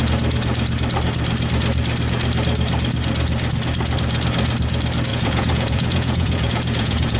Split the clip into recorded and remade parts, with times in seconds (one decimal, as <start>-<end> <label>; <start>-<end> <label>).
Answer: 0.0-5.1 recorded; 5.1-7.2 remade